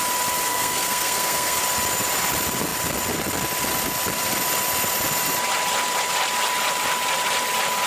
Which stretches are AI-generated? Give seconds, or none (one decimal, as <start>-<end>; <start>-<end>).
0.5-1.6